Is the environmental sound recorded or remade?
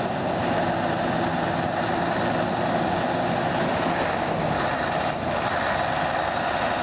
recorded